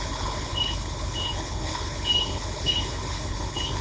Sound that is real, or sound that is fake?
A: fake